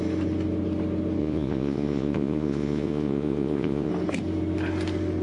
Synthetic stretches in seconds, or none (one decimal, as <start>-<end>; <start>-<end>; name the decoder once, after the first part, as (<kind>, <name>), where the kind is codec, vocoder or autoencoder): 1.2-3.9 (vocoder, Vocos)